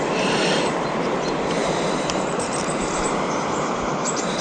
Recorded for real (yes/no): no